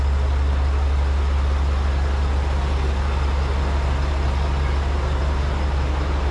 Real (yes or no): yes